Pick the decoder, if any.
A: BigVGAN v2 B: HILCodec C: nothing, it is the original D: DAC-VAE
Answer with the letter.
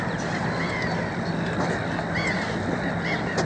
C